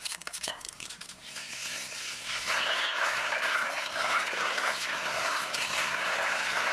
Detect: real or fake fake